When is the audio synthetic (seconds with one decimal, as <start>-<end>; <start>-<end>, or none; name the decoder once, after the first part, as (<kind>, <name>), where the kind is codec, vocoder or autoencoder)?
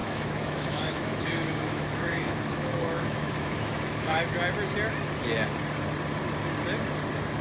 0.0-4.4 (autoencoder, DAC-VAE)